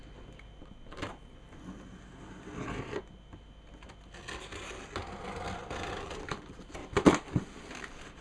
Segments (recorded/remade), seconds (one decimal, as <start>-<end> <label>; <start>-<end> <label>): 0.0-0.6 recorded; 0.6-1.6 remade; 1.6-5.9 recorded; 5.9-6.8 remade; 6.8-7.4 recorded; 7.4-8.2 remade